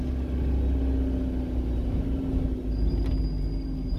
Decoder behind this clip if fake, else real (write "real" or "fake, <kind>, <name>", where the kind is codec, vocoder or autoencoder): real